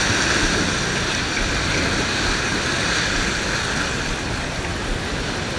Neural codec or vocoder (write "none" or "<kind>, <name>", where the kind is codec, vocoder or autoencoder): none